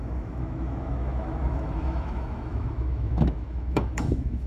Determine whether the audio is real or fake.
fake